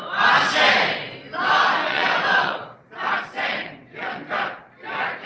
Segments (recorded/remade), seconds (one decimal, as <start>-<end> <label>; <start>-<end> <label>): 0.0-1.8 recorded; 1.8-3.0 remade; 3.0-3.5 recorded; 3.5-4.3 remade; 4.3-5.3 recorded